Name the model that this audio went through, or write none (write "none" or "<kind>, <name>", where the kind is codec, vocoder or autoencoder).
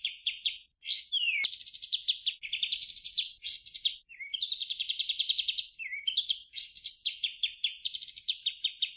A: none